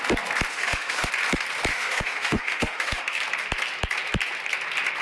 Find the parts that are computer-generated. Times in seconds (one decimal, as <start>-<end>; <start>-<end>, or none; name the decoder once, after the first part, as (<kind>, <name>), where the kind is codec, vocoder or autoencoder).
0.5-1.1 (autoencoder, DAC-VAE); 1.7-3.2